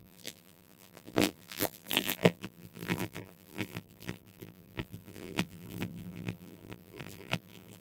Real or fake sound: fake